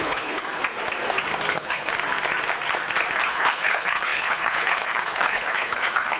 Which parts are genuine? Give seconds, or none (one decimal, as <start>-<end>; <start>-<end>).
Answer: 0.6-1.5; 1.9-3.3